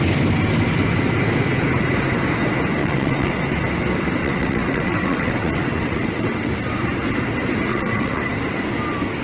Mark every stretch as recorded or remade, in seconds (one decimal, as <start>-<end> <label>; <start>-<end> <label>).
0.0-2.8 recorded; 2.8-3.3 remade; 3.3-4.2 recorded; 4.2-6.5 remade; 6.5-7.7 recorded; 7.7-8.2 remade; 8.2-9.2 recorded